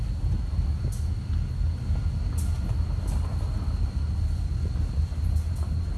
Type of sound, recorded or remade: recorded